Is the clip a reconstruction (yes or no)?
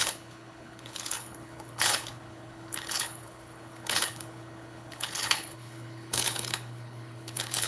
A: yes